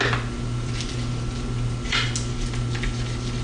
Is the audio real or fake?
real